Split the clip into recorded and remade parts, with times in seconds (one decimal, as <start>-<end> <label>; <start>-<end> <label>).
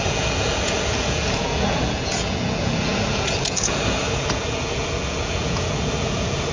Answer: 0.0-6.5 remade